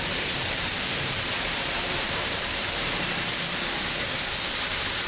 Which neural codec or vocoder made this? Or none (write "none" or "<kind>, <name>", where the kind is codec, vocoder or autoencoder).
vocoder, BigVGAN v2